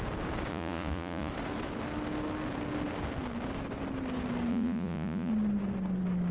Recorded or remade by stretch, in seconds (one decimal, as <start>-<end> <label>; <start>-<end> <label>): 0.0-0.5 recorded; 0.5-1.3 remade; 1.3-4.5 recorded; 4.5-5.3 remade; 5.3-6.3 recorded